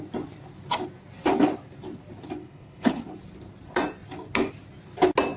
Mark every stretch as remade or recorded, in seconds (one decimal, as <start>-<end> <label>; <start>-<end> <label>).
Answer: 0.0-2.4 recorded; 2.4-3.0 remade; 3.0-5.4 recorded